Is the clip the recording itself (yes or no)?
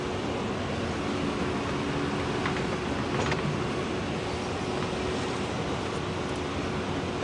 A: yes